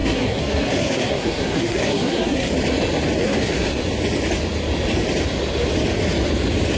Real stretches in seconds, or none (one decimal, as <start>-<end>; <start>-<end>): 2.5-3.2; 3.8-6.8